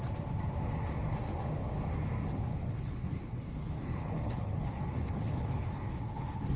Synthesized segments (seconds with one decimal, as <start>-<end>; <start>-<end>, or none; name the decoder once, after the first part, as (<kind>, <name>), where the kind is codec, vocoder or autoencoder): 2.5-6.6 (codec, HILCodec)